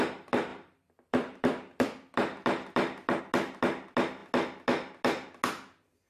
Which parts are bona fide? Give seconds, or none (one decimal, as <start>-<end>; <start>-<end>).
0.0-0.5; 3.2-6.1